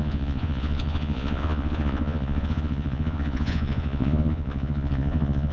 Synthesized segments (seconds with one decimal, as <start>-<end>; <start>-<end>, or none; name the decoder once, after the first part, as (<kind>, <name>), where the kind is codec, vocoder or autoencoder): 0.0-5.5 (vocoder, Vocos)